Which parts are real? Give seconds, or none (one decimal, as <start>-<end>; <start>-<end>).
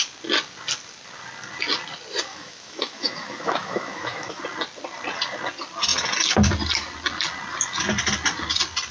0.0-2.3; 4.4-8.9